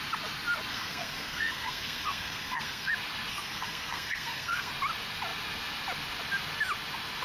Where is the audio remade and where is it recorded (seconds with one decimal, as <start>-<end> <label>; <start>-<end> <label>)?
0.0-0.7 recorded; 0.7-2.9 remade; 2.9-3.3 recorded; 3.3-4.7 remade; 4.7-7.2 recorded